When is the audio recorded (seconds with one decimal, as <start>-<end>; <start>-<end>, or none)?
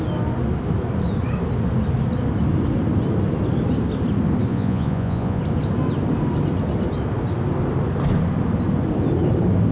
0.0-4.5; 5.4-9.7